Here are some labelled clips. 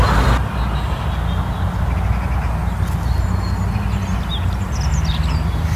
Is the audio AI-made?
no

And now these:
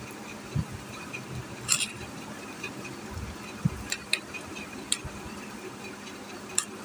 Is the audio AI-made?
yes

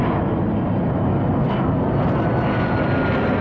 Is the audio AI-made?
no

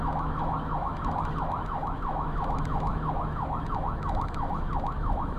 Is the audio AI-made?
yes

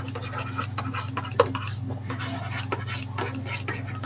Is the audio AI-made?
no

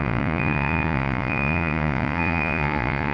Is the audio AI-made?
yes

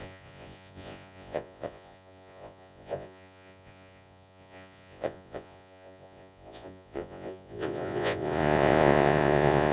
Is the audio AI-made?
yes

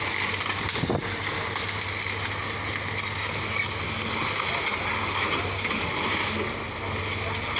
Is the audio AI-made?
no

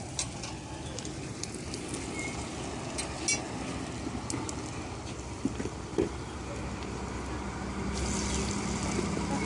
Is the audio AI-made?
no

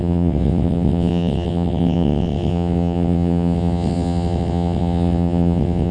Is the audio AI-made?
yes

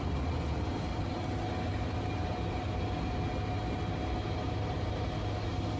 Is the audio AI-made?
no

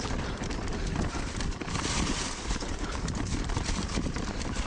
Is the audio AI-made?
yes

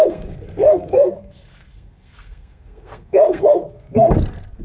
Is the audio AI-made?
yes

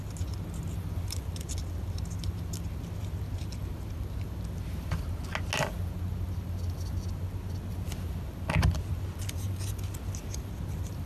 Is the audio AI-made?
no